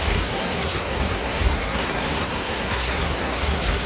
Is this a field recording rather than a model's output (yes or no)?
no